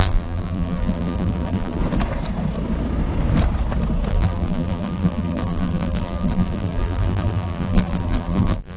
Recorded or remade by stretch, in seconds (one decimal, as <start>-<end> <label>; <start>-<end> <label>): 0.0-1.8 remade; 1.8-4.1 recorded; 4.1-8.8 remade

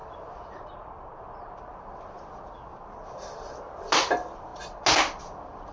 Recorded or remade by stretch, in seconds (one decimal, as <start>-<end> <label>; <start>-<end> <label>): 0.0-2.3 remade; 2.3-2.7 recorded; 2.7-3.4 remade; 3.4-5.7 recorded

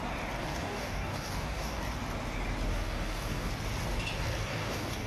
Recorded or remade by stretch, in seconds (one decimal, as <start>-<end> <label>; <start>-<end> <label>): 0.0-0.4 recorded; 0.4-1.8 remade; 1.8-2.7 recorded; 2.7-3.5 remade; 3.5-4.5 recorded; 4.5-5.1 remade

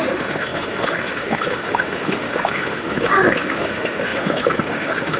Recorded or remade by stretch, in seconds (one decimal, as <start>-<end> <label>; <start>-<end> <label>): 0.0-5.2 remade

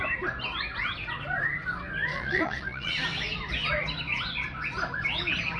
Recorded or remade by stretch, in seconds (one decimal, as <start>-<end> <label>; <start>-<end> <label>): 0.0-2.1 recorded; 2.1-3.0 remade; 3.0-5.6 recorded